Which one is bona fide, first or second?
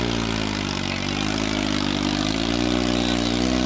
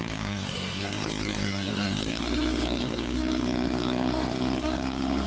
first